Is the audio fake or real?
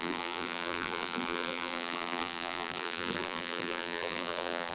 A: fake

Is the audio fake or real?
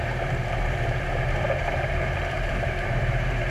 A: fake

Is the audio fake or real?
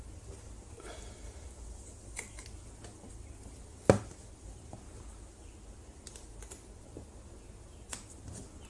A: real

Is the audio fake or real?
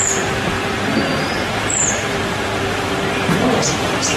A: fake